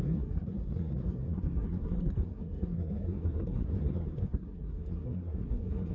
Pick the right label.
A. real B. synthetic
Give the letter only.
B